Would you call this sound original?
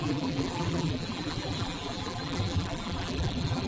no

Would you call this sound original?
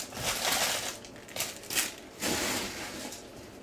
yes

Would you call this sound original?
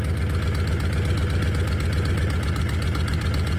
yes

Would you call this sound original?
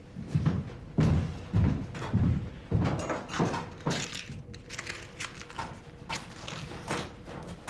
yes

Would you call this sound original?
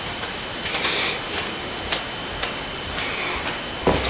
yes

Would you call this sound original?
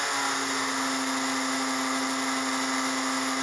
yes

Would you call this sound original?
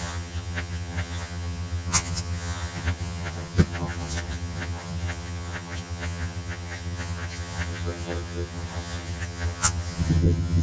no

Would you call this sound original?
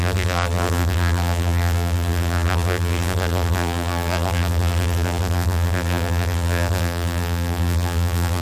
no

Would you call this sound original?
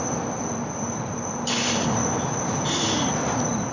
yes